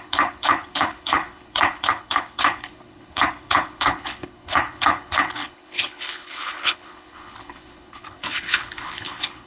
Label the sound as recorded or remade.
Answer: remade